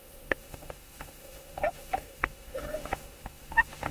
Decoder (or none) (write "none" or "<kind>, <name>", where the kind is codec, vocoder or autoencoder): autoencoder, DAC-VAE